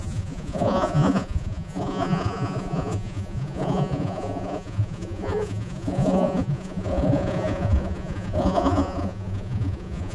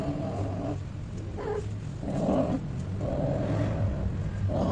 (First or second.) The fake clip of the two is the first